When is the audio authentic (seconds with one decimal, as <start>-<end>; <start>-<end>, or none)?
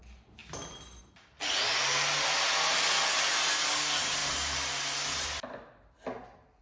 0.0-6.6